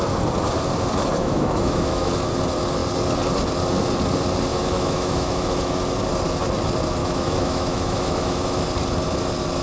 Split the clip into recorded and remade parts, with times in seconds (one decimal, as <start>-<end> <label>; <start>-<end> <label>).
0.0-1.2 recorded; 1.2-2.1 remade; 2.1-4.5 recorded; 4.5-5.7 remade; 5.7-7.0 recorded; 7.0-8.6 remade; 8.6-9.6 recorded